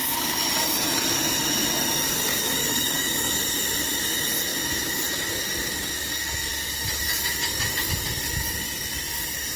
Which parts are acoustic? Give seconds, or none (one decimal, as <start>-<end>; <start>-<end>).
0.0-2.3; 3.3-9.6